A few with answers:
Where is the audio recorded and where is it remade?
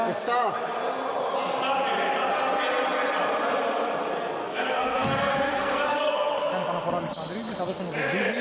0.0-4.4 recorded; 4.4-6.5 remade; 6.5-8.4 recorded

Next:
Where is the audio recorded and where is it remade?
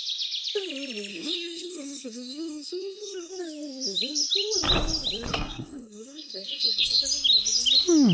0.0-1.1 recorded; 1.1-3.4 remade; 3.4-5.3 recorded; 5.3-7.0 remade; 7.0-8.1 recorded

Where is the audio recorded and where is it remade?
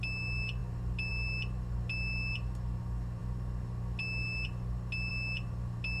0.0-6.0 recorded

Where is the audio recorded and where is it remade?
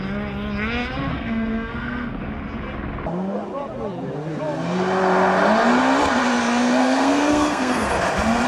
0.0-1.1 recorded; 1.1-2.2 remade; 2.2-6.8 recorded; 6.8-7.9 remade; 7.9-8.5 recorded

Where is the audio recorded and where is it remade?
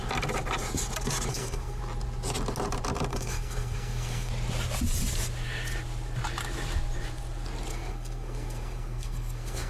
0.0-1.3 recorded; 1.3-1.8 remade; 1.8-3.1 recorded; 3.1-4.3 remade; 4.3-7.7 recorded; 7.7-9.7 remade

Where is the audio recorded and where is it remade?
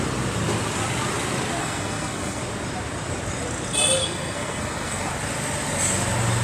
0.0-1.6 recorded; 1.6-2.4 remade; 2.4-4.0 recorded; 4.0-5.1 remade; 5.1-6.4 recorded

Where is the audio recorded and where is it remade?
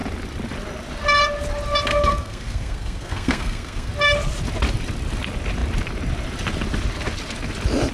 0.0-1.9 recorded; 1.9-3.9 remade; 3.9-7.9 recorded